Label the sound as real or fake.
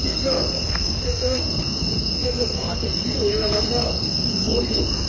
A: fake